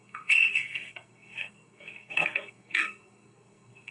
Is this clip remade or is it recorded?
remade